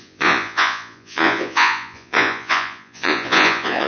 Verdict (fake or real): fake